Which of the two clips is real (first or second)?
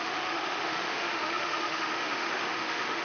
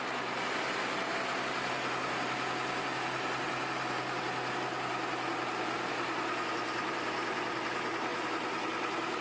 second